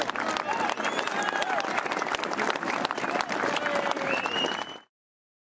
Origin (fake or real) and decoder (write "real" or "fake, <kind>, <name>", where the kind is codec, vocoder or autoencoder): real